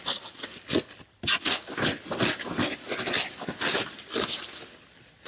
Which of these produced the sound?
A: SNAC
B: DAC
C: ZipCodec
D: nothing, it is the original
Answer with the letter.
D